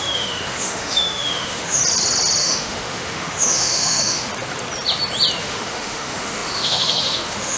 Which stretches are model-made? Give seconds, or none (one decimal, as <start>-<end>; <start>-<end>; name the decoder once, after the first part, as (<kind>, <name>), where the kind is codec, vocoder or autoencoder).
0.0-1.8 (autoencoder, DAC-VAE); 2.4-4.3; 5.4-7.6